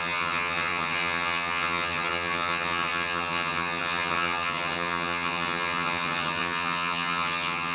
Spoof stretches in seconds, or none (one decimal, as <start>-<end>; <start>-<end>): 0.0-7.7